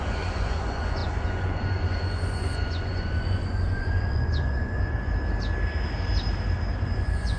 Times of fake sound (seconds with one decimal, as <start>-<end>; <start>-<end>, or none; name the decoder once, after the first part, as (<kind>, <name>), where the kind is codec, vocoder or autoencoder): 0.0-5.1 (vocoder, Vocos); 6.8-7.4